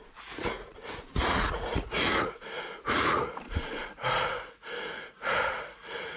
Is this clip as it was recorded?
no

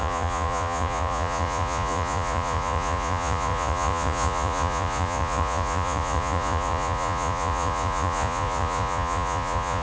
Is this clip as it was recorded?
no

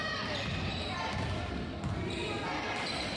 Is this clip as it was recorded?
yes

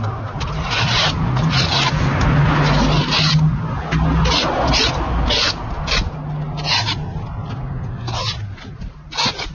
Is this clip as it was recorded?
yes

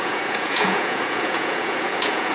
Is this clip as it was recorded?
no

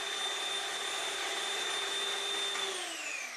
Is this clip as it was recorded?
yes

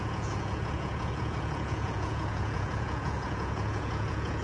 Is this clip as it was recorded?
no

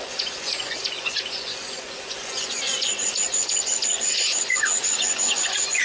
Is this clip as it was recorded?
no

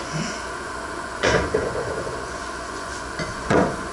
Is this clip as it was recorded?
no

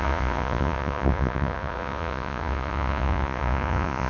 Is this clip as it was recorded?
no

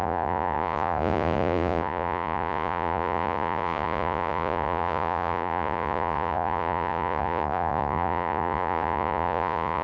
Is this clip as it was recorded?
no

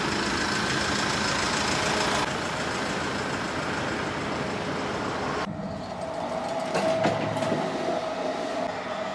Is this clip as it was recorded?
yes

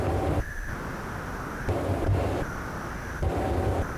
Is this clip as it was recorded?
yes